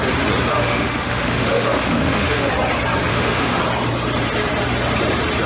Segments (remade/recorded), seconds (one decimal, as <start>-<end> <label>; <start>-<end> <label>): 0.0-0.5 recorded; 0.5-2.5 remade; 2.5-3.1 recorded; 3.1-3.6 remade; 3.6-5.5 recorded